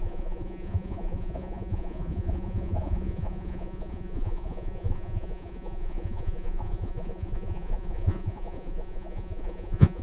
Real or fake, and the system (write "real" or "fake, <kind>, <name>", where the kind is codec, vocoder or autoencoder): fake, vocoder, Vocos